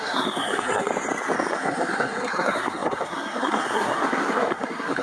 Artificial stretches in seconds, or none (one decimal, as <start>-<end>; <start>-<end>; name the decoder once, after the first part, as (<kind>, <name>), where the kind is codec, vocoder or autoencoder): 0.0-0.9 (codec, SNAC); 1.5-5.0